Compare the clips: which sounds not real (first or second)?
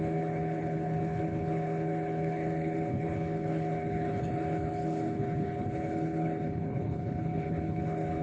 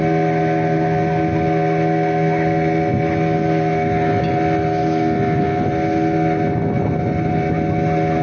first